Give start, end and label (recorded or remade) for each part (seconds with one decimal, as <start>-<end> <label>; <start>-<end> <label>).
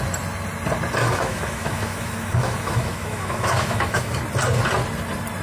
0.0-1.0 recorded; 1.0-4.2 remade; 4.2-5.4 recorded